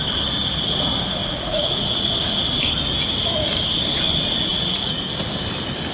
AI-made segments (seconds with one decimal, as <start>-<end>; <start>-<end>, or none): 1.2-2.1; 4.5-5.0